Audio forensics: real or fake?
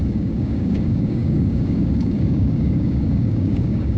fake